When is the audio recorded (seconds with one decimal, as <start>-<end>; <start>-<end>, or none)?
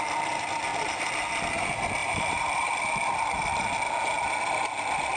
0.0-0.7; 1.5-2.0; 2.7-5.2